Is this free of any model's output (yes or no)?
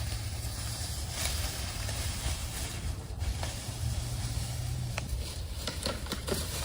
no